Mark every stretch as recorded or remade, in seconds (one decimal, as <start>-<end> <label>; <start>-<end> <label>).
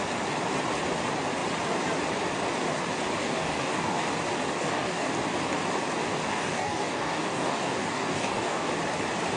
0.0-3.2 recorded; 3.2-4.0 remade; 4.0-4.6 recorded; 4.6-5.1 remade; 5.1-6.3 recorded; 6.3-8.7 remade; 8.7-9.4 recorded